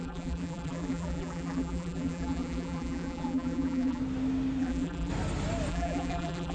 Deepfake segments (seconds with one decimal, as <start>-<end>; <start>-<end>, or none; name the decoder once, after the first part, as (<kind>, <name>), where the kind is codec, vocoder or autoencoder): 0.0-4.0 (vocoder, BigVGAN v2); 4.6-5.1; 5.7-6.5